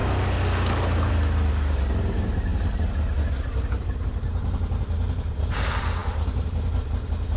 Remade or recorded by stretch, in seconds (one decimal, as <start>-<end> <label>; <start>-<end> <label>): 0.0-6.0 recorded; 6.0-7.0 remade; 7.0-7.4 recorded